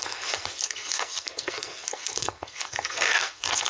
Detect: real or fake fake